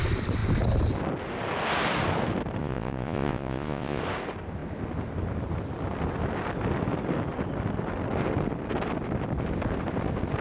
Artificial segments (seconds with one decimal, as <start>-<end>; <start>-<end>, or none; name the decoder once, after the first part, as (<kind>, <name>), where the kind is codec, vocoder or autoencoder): 2.6-4.0 (vocoder, Vocos)